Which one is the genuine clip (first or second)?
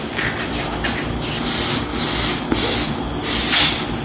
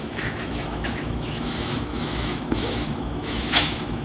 first